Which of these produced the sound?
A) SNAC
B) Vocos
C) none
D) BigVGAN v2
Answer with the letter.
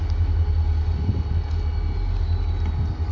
C